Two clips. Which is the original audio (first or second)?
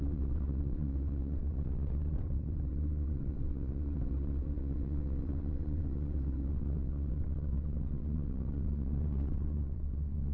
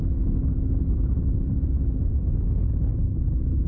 second